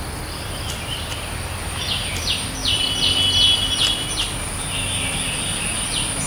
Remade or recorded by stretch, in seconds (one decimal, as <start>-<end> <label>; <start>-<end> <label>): 0.0-6.3 recorded